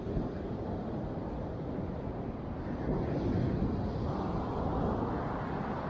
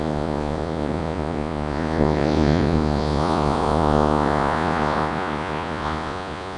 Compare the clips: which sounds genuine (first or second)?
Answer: first